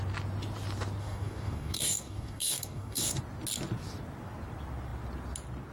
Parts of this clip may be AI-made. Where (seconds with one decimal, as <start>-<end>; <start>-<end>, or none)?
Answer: 1.0-3.2